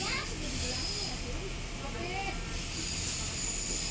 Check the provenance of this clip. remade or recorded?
recorded